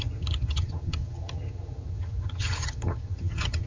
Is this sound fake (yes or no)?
yes